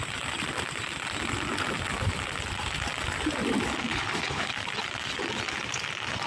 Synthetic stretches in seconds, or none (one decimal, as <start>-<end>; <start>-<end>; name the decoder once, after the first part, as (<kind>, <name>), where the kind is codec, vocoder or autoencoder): 3.9-4.5 (codec, HILCodec)